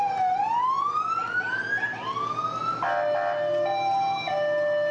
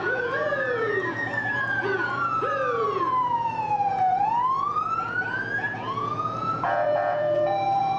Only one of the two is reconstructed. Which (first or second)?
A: second